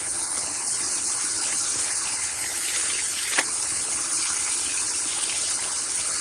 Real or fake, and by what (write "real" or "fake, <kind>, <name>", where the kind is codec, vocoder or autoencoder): fake, codec, HILCodec